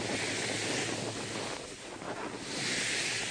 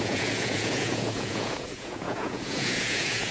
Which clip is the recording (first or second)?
first